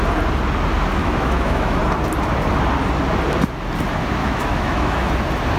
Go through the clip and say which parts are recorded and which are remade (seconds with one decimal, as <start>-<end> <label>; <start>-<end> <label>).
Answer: 0.0-1.0 recorded; 1.0-1.8 remade; 1.8-4.2 recorded; 4.2-5.1 remade; 5.1-5.6 recorded